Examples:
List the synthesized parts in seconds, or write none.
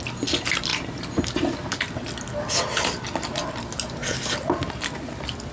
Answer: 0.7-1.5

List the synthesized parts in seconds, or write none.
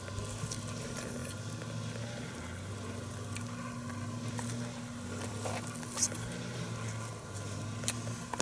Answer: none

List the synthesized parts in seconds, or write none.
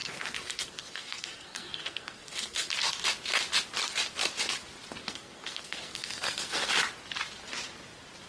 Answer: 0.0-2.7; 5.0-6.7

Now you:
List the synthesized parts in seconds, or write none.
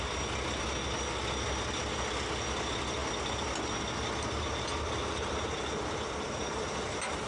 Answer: none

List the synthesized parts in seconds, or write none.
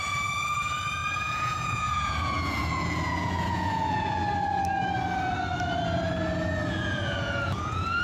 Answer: 0.0-4.2; 6.7-8.0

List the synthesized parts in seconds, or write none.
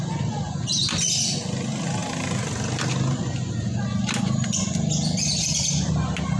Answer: none